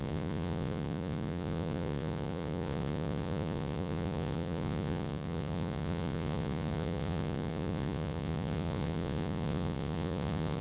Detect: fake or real fake